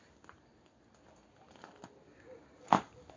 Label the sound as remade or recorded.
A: recorded